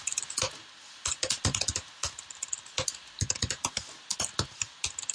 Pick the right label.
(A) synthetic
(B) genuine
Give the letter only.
B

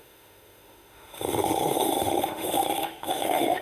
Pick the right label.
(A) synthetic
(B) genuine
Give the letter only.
A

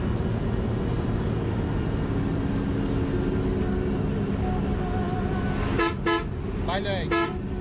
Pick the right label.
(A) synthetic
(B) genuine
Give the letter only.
B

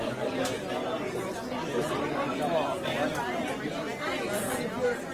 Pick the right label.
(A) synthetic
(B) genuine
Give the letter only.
B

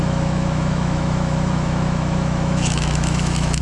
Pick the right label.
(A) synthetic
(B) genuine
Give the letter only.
A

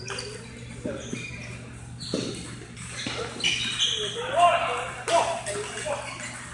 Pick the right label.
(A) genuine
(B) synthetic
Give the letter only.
A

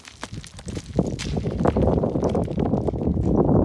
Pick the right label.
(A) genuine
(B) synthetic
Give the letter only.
A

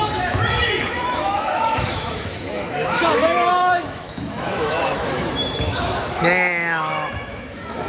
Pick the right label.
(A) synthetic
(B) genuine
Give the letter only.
A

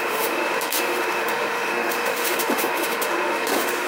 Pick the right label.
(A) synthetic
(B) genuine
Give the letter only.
A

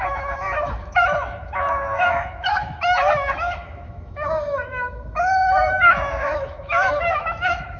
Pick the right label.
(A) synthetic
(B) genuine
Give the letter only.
A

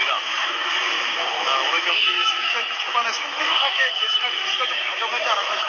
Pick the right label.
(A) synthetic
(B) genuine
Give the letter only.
A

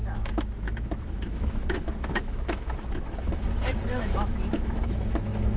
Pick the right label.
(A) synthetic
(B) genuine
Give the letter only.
A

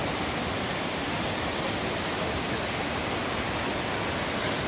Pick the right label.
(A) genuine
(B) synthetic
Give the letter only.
A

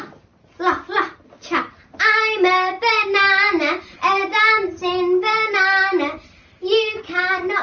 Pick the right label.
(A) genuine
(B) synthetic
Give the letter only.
A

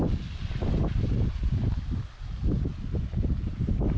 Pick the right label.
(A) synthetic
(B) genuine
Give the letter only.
B